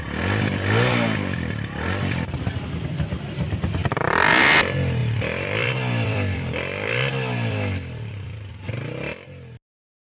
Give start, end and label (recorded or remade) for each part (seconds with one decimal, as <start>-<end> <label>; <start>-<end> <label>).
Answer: 0.0-5.0 recorded; 5.0-8.5 remade; 8.5-10.1 recorded